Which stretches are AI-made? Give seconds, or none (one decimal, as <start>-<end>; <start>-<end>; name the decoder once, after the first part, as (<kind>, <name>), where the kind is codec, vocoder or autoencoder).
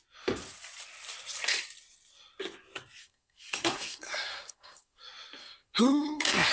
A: 3.0-5.0 (codec, SNAC); 5.4-6.5